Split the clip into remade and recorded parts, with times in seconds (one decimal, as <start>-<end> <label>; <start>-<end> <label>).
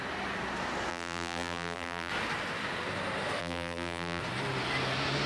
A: 0.0-0.9 recorded; 0.9-2.1 remade; 2.1-3.4 recorded; 3.4-4.2 remade; 4.2-5.3 recorded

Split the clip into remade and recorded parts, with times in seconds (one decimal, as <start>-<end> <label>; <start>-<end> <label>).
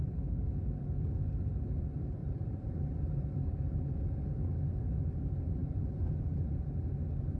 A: 0.0-2.2 recorded; 2.2-2.9 remade; 2.9-7.4 recorded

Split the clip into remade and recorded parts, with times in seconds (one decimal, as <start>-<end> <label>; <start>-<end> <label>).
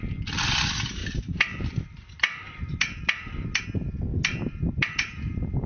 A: 0.0-1.0 recorded; 1.0-3.6 remade; 3.6-4.3 recorded; 4.3-5.3 remade; 5.3-5.7 recorded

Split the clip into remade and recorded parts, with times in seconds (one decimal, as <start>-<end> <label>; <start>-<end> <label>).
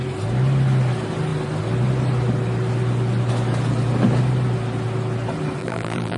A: 0.0-5.6 recorded; 5.6-6.2 remade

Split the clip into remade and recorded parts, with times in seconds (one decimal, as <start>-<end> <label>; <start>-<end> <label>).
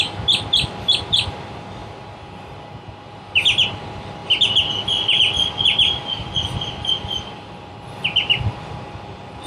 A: 0.0-8.4 remade; 8.4-9.5 recorded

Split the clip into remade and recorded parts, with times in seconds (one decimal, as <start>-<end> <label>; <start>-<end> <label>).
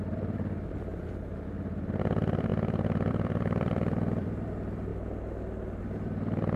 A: 0.0-4.9 remade; 4.9-5.8 recorded; 5.8-6.6 remade